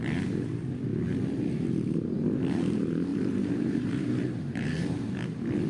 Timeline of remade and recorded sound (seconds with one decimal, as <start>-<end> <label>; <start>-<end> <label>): 0.0-3.1 recorded; 3.1-5.1 remade; 5.1-5.7 recorded